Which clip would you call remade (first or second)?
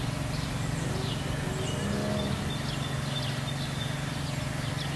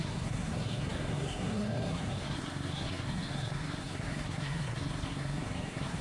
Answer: second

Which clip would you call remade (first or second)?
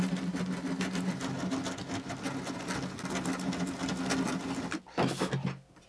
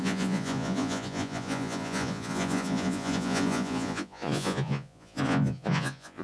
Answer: second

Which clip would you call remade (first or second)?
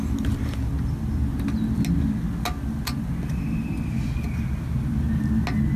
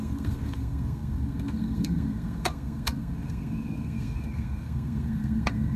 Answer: second